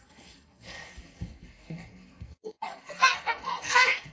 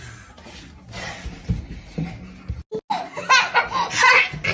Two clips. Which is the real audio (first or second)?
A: second